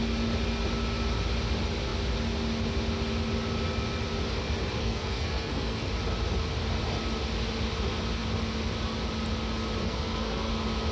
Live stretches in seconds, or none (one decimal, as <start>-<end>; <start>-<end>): 0.0-4.8; 5.9-9.8; 10.5-10.9